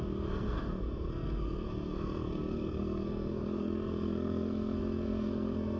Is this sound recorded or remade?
remade